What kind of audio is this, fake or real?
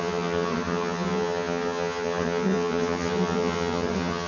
fake